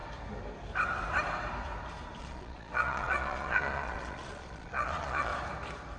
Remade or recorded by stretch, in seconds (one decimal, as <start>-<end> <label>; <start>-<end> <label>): 0.0-2.2 recorded; 2.2-5.3 remade; 5.3-6.0 recorded